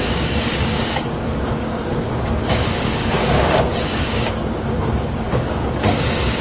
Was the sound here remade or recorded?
remade